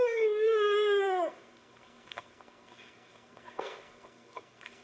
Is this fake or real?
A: fake